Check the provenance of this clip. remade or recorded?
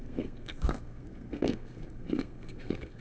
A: remade